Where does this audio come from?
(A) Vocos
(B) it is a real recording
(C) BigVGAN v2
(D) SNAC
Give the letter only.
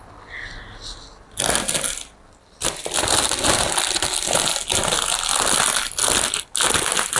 B